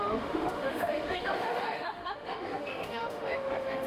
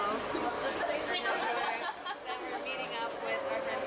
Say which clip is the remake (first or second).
first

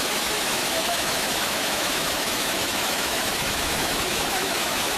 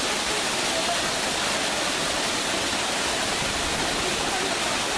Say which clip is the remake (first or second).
first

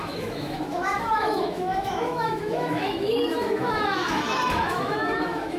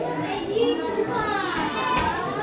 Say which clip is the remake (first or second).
first